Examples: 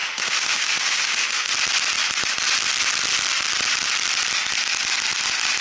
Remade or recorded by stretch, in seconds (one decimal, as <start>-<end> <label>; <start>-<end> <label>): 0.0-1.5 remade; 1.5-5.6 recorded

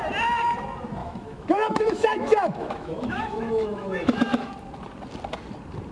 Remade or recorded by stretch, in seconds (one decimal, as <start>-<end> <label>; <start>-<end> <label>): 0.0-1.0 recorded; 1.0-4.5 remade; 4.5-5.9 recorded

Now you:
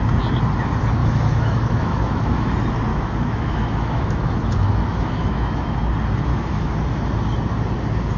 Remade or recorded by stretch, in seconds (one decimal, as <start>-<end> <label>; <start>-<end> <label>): 0.0-1.0 recorded; 1.0-2.5 remade; 2.5-2.9 recorded; 2.9-5.8 remade; 5.8-6.3 recorded; 6.3-6.8 remade; 6.8-8.2 recorded

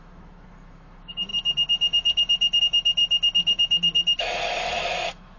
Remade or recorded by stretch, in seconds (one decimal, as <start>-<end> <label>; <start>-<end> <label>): 0.0-5.4 remade